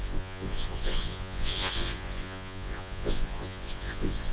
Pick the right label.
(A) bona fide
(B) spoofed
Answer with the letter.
B